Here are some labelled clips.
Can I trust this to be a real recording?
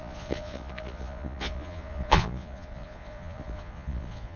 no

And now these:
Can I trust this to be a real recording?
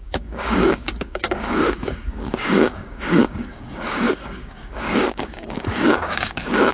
no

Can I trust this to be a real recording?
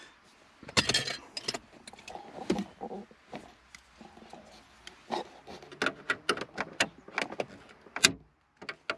yes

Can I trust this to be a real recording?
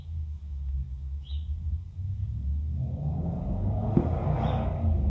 no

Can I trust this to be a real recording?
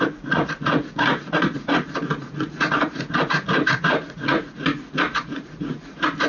no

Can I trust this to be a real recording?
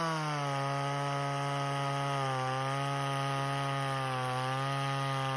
yes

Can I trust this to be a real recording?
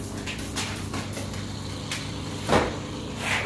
yes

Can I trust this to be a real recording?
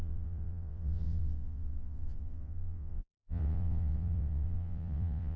no